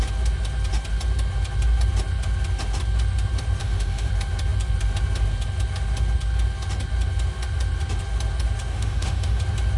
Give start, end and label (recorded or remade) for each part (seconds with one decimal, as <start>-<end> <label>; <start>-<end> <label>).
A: 0.0-3.6 recorded; 3.6-4.1 remade; 4.1-8.7 recorded; 8.7-9.4 remade; 9.4-9.8 recorded